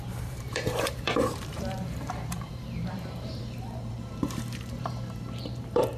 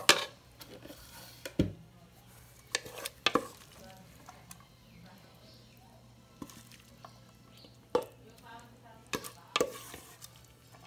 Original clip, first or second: second